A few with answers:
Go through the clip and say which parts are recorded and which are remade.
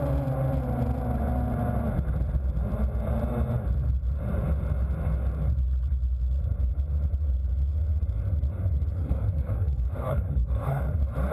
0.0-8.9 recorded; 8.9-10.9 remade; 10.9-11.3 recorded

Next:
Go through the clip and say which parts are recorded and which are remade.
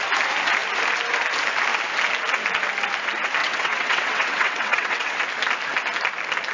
0.0-3.4 recorded; 3.4-5.2 remade; 5.2-6.5 recorded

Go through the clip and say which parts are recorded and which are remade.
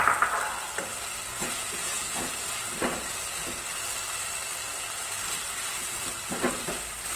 0.0-1.3 recorded; 1.3-2.3 remade; 2.3-7.2 recorded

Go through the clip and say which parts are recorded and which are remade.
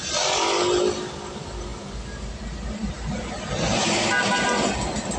0.0-5.2 recorded